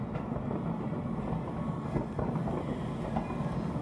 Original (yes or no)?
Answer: yes